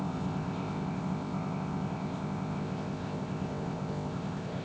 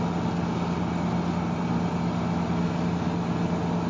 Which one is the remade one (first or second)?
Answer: first